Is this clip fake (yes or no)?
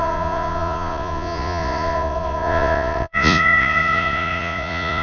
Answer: yes